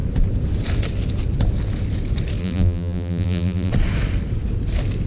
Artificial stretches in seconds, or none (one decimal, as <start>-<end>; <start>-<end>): 2.4-3.7